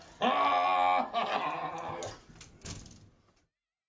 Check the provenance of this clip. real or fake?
real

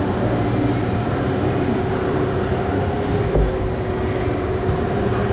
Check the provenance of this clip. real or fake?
real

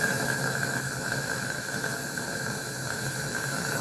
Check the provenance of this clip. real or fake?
fake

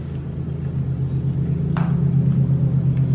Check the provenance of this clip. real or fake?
real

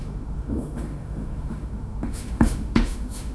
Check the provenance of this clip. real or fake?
fake